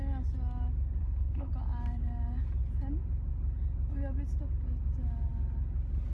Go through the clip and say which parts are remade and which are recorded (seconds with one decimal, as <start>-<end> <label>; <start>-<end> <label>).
0.0-1.0 recorded; 1.0-1.5 remade; 1.5-6.1 recorded